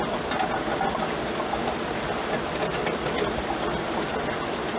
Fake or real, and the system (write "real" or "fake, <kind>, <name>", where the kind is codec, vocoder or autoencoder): real